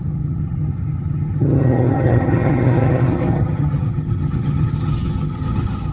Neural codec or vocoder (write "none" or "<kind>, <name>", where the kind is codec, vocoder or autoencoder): vocoder, HiFi-GAN